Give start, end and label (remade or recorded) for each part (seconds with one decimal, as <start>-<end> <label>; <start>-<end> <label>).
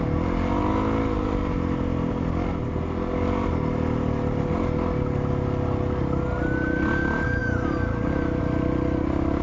0.0-7.4 recorded; 7.4-8.4 remade; 8.4-9.4 recorded